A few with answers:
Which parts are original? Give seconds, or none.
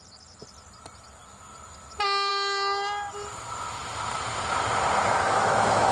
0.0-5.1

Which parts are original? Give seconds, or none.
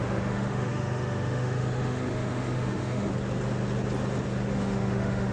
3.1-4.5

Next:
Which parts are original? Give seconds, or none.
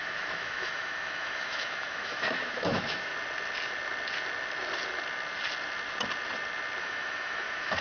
3.1-6.8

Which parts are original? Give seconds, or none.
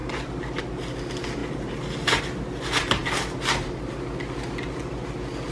0.0-5.5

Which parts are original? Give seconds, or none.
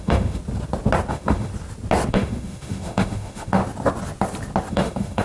0.4-1.1; 1.5-2.1; 3.6-4.7